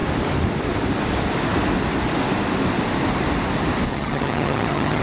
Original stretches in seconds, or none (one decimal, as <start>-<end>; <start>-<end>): 0.0-3.9